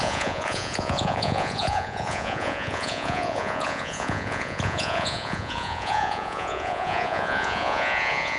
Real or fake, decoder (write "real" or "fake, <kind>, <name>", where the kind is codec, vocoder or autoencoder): fake, vocoder, Vocos